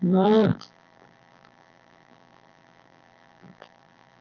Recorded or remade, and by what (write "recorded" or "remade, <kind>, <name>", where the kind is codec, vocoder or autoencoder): remade, vocoder, BigVGAN v2